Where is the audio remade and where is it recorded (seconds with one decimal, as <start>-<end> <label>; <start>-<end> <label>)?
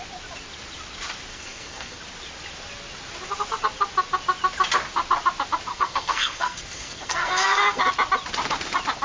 0.0-1.3 recorded; 1.3-2.0 remade; 2.0-5.7 recorded; 5.7-7.8 remade; 7.8-9.0 recorded